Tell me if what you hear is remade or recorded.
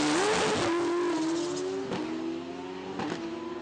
recorded